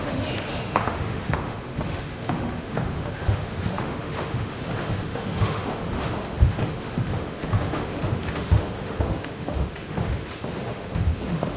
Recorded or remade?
remade